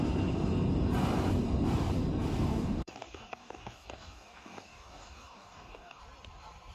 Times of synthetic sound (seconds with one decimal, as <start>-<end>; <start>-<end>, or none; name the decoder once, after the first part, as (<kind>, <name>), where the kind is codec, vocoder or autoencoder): 2.5-6.0 (codec, DAC)